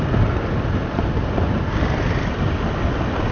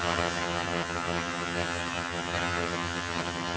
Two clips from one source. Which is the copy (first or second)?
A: second